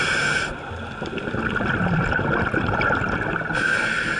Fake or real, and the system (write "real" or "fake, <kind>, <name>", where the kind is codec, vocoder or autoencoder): real